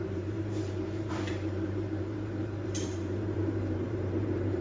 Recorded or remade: remade